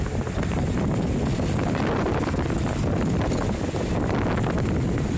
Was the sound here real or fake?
real